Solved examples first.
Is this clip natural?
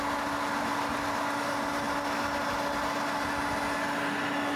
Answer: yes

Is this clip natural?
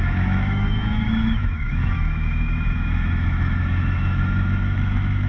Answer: no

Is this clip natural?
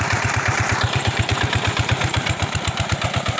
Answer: no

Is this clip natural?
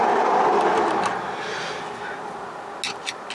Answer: yes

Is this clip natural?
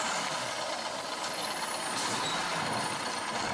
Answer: yes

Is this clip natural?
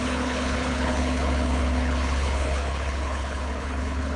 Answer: no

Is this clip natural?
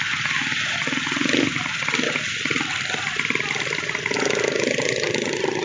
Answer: yes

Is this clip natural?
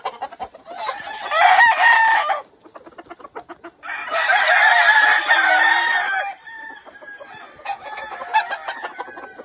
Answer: yes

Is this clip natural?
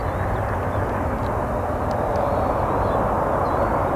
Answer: yes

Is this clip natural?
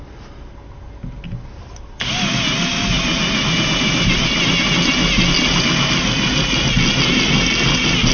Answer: yes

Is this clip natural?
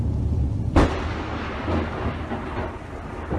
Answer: yes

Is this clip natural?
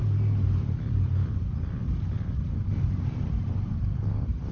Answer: yes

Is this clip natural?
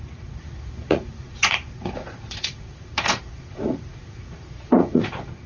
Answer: no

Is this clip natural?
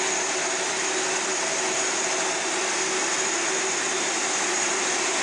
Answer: yes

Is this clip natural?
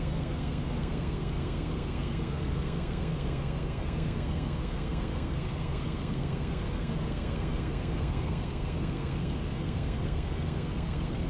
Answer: no